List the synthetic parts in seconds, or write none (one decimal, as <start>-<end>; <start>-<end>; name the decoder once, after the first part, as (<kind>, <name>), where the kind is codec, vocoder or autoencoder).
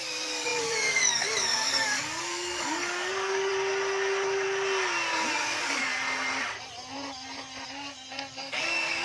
0.0-3.5 (codec, DAC); 5.3-5.9; 8.3-9.0